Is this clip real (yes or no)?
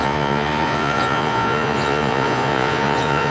no